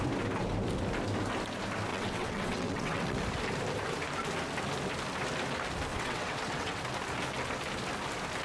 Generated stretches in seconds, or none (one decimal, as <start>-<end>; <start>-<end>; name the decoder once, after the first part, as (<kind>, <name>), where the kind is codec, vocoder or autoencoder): 1.9-3.2 (vocoder, WaveNeXt); 5.9-6.8